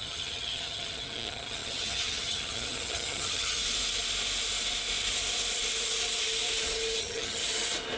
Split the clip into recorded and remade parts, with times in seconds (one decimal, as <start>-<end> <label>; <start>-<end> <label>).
0.0-3.6 remade; 3.6-7.0 recorded; 7.0-7.4 remade; 7.4-8.0 recorded